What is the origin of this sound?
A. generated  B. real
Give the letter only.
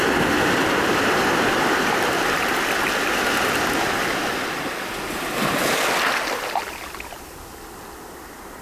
B